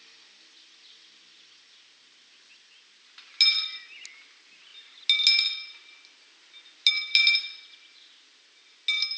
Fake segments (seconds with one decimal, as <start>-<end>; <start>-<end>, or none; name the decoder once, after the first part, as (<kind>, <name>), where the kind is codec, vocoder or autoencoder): none